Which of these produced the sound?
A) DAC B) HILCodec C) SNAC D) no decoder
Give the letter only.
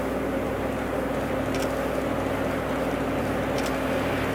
D